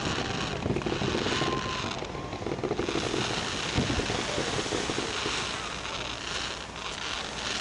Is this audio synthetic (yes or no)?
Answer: no